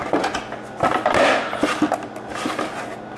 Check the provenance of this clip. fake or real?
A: real